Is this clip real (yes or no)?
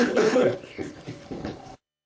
no